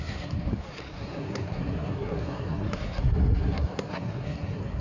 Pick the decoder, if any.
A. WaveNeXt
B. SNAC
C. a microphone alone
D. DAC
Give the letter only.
B